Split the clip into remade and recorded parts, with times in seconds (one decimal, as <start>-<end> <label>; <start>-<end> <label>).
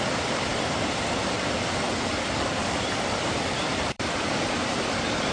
0.0-5.3 remade